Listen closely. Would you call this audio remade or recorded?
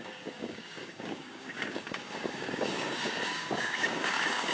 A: remade